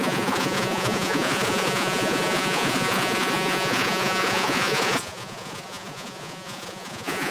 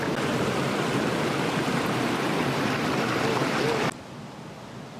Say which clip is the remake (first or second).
first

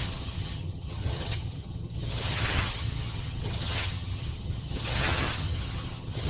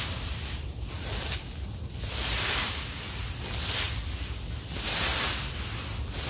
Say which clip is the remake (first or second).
first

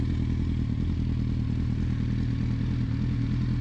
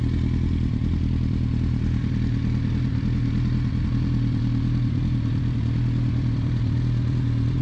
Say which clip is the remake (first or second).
second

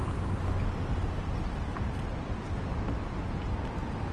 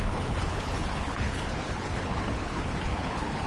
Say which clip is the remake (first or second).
second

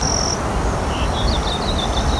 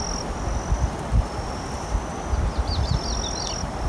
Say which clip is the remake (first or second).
first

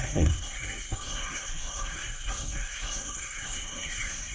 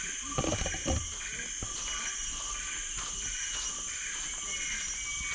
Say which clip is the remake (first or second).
first